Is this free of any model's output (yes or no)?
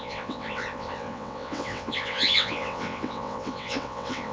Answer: no